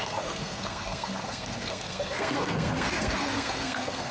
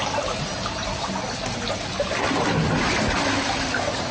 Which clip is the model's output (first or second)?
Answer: first